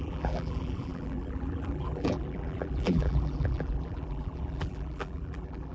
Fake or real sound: fake